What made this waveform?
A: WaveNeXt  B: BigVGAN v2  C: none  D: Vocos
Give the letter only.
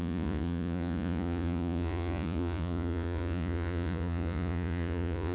D